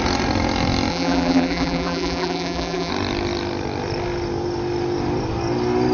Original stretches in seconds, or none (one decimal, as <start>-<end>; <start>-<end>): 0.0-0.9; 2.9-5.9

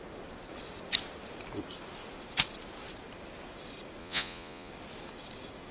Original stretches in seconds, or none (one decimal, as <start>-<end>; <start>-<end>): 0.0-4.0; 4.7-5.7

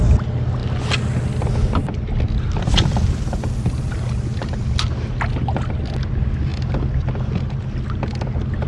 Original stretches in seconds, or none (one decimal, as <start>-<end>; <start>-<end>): 0.0-8.7

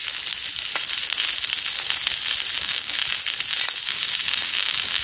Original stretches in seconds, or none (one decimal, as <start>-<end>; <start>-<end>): 0.0-2.6; 3.0-3.9

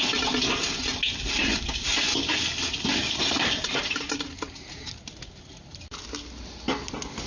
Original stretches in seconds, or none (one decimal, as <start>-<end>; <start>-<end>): 0.0-3.0; 3.8-7.3

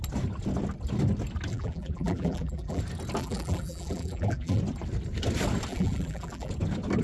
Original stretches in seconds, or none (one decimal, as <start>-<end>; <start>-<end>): 0.0-1.5; 2.8-3.2; 4.6-5.7; 6.5-7.0

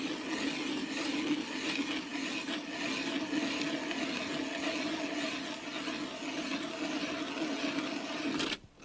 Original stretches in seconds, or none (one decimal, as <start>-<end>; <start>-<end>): 0.0-8.8

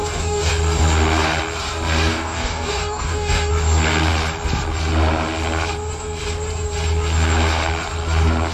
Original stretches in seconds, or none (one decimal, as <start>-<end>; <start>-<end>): 0.5-2.1; 3.5-8.5